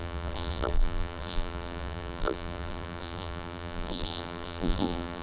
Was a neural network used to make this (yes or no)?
yes